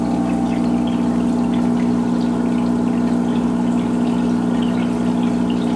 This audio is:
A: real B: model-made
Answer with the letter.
A